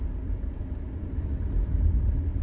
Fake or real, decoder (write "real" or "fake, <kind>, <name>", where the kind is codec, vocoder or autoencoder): real